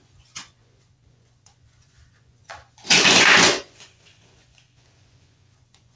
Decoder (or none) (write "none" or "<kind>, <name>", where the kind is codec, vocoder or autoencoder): vocoder, Vocos